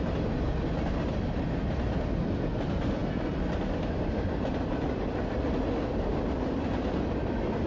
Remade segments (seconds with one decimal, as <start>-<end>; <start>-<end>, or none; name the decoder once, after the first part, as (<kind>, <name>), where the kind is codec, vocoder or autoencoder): none

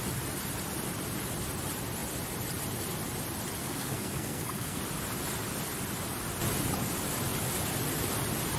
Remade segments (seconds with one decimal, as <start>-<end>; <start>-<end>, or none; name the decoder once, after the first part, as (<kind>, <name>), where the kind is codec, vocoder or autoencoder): 3.6-4.8 (codec, SNAC)

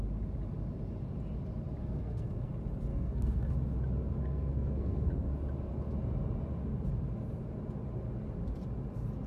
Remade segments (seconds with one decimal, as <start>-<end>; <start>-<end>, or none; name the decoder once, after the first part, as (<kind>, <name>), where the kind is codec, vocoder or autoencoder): 1.8-2.5 (codec, SNAC); 2.9-3.5; 4.2-5.3

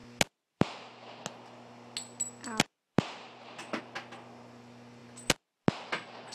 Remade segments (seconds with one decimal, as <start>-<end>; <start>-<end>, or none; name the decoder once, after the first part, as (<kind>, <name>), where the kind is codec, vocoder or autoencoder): none